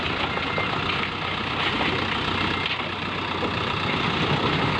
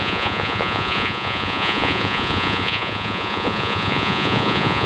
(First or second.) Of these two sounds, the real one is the first